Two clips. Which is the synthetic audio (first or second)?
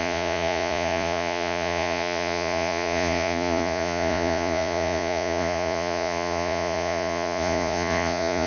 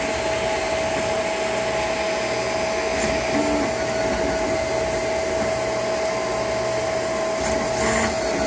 first